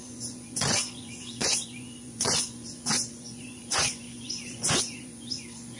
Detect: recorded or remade remade